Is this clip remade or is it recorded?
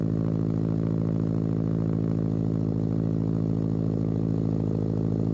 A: recorded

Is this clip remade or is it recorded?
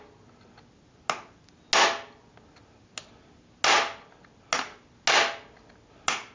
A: recorded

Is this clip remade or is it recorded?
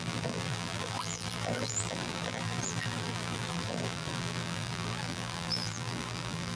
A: remade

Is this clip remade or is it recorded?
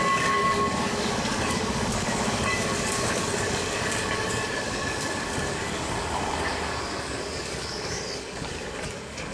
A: remade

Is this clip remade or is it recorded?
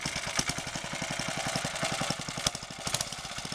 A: recorded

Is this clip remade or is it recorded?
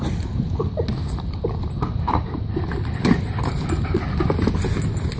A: recorded